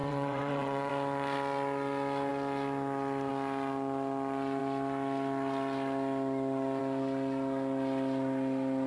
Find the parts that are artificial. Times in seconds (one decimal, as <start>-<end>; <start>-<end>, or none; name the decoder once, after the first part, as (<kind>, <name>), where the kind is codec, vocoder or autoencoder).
0.0-0.9 (vocoder, WaveNeXt)